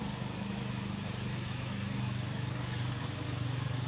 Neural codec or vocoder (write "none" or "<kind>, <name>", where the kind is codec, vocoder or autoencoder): codec, DAC